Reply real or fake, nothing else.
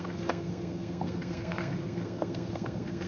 fake